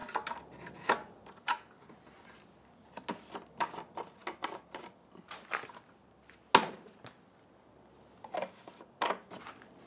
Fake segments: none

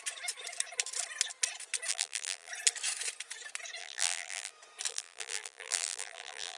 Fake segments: 1.9-2.5 (vocoder, BigVGAN v2); 3.8-4.5; 4.9-6.6

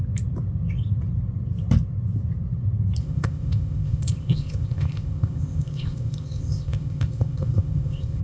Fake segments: 3.0-8.2 (codec, ZipCodec)

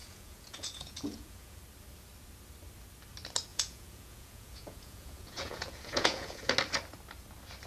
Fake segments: 0.0-1.6 (vocoder, Vocos); 3.5-6.5

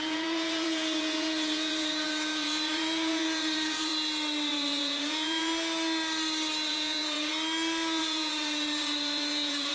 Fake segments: 0.0-3.9 (vocoder, Vocos); 4.5-5.5; 6.7-7.3; 8.0-9.7